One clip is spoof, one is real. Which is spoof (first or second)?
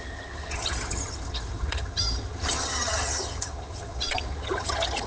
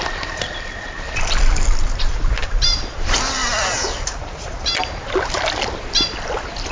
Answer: first